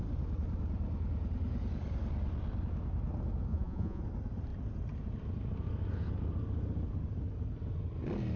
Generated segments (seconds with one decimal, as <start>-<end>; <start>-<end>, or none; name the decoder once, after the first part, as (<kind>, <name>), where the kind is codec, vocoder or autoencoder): 3.5-4.0 (vocoder, Vocos)